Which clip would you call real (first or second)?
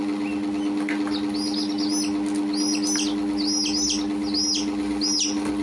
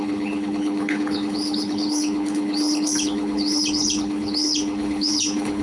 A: first